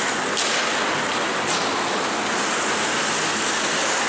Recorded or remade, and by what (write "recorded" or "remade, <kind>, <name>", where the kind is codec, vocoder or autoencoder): recorded